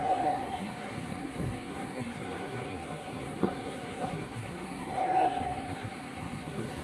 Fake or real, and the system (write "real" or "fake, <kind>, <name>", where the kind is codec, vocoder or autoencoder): fake, codec, SNAC